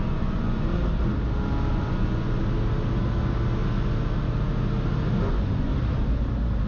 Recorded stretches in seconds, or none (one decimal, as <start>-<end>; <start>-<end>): 0.8-1.7; 2.4-5.2; 5.7-6.7